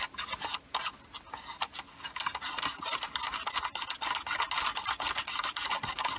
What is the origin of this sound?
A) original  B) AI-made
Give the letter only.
A